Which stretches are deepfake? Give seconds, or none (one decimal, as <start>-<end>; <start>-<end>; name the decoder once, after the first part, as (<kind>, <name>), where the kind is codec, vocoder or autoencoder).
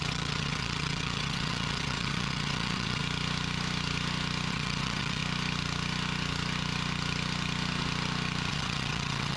0.0-3.0 (vocoder, WaveNeXt); 4.5-5.2; 8.5-9.4